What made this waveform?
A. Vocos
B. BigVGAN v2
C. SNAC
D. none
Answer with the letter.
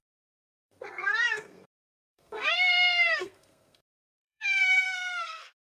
C